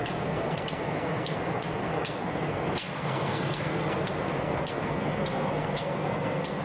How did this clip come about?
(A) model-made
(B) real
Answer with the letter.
A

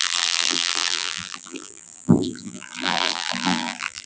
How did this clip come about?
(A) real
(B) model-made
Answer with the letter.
B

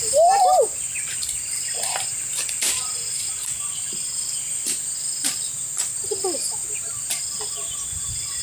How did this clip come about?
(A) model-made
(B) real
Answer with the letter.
B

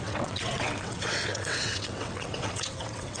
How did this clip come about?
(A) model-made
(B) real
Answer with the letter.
A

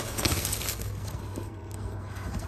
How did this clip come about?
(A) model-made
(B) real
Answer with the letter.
A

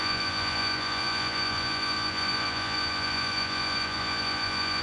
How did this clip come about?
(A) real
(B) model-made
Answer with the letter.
B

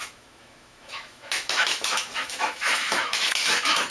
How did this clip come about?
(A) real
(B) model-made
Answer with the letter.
B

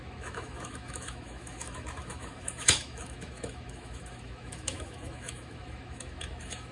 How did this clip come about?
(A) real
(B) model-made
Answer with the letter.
B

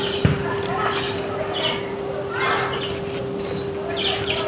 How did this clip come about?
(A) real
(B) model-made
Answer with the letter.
B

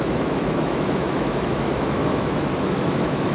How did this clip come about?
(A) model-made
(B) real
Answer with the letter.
A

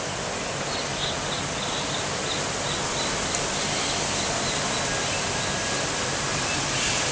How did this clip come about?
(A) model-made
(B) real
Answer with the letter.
B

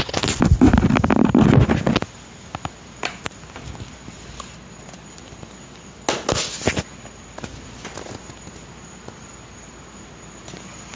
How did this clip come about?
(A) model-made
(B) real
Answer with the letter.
B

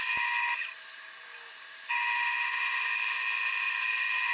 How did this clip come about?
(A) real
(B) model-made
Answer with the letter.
A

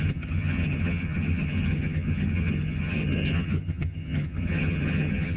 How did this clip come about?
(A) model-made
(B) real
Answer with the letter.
A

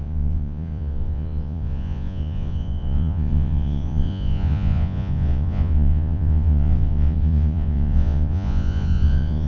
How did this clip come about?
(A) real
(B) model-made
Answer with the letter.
B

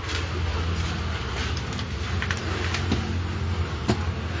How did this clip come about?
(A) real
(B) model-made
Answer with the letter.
A